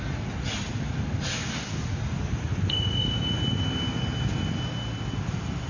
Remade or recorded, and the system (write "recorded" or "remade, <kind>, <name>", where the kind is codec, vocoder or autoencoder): recorded